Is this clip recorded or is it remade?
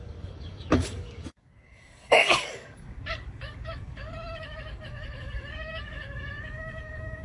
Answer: remade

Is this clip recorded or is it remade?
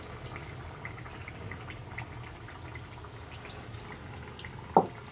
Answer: recorded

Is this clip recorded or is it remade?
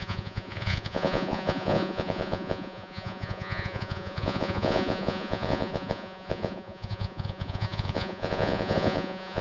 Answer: remade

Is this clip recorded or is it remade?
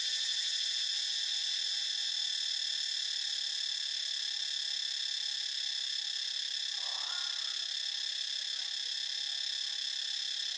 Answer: recorded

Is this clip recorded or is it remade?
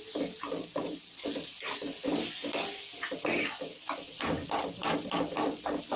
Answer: recorded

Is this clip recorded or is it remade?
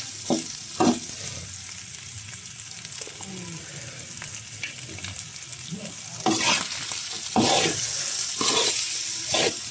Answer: recorded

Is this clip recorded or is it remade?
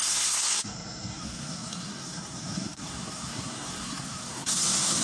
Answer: remade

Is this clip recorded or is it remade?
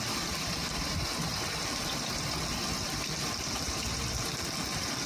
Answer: recorded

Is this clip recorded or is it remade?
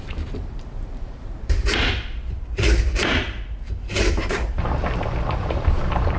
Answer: remade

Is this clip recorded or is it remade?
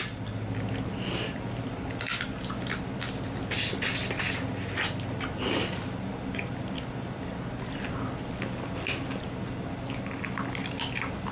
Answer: recorded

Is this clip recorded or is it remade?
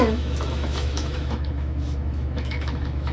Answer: remade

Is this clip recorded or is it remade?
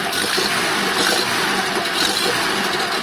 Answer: recorded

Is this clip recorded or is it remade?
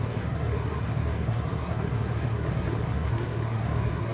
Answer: remade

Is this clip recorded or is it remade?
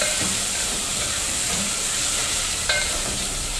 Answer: remade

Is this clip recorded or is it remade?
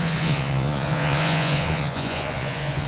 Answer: remade